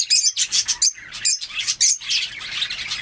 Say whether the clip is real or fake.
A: real